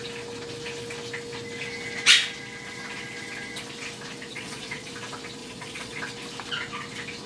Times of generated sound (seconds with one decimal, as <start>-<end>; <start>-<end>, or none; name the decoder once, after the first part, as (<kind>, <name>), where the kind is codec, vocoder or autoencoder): 4.3-4.9 (vocoder, Vocos); 5.4-6.0